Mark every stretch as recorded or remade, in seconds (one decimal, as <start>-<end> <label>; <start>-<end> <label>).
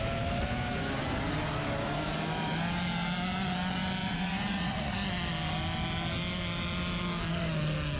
0.0-4.0 recorded; 4.0-4.9 remade; 4.9-8.0 recorded